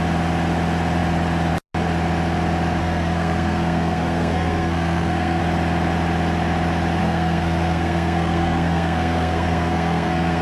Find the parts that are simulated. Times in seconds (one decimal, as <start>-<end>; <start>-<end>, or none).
2.8-5.4; 7.0-10.4